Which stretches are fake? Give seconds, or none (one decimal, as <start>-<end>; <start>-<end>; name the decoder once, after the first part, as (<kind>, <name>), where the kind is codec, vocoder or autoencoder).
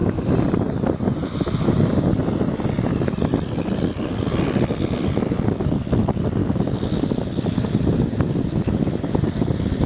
none